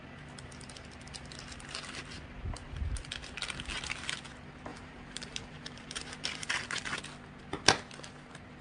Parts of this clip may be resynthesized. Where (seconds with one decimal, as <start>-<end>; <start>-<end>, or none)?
4.7-6.5